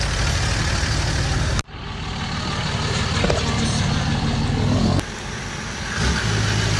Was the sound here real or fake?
real